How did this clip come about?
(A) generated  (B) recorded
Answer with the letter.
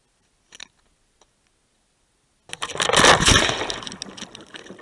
B